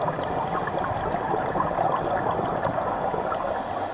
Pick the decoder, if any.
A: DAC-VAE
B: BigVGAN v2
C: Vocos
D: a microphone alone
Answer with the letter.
D